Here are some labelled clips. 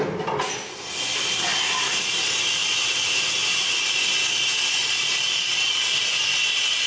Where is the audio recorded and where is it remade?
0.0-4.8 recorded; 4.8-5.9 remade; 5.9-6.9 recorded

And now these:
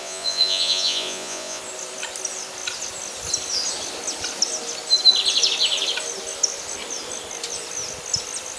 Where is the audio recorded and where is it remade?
0.0-1.6 remade; 1.6-8.6 recorded